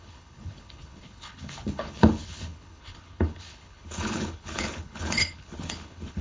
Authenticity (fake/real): fake